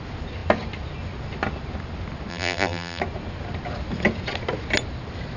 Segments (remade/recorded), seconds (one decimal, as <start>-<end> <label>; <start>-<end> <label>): 0.0-2.3 recorded; 2.3-3.0 remade; 3.0-5.4 recorded